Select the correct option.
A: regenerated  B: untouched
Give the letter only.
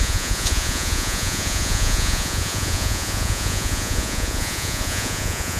A